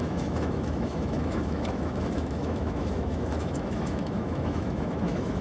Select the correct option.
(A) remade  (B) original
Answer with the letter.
A